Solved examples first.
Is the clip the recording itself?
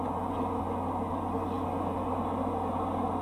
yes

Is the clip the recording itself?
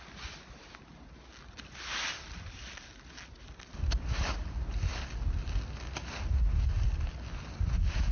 yes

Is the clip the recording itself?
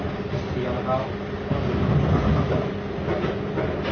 yes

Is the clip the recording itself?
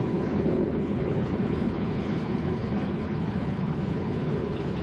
no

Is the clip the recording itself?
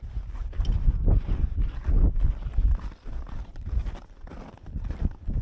yes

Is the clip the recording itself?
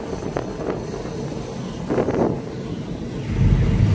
yes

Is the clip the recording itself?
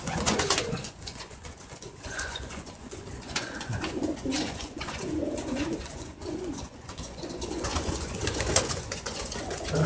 no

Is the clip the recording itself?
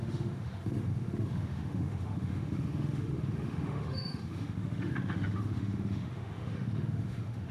no